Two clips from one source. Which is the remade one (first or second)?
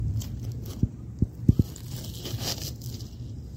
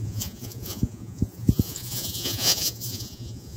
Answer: second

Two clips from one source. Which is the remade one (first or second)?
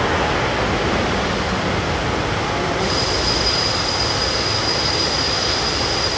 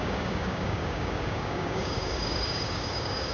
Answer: second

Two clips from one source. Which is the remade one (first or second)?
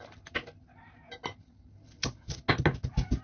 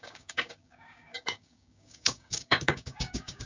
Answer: second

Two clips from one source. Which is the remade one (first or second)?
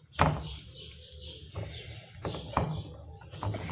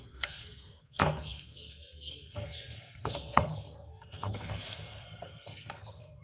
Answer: second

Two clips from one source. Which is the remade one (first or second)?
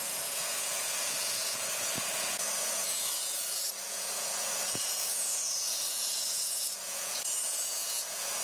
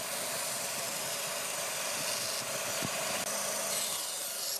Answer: first